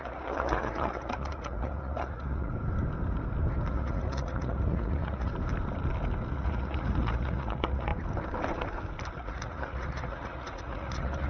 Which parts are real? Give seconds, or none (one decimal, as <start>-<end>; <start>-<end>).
2.5-3.7; 5.3-6.3; 7.9-9.1